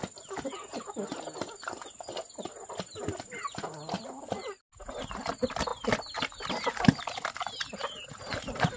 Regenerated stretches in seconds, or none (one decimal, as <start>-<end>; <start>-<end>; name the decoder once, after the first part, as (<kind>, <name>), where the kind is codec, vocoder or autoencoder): none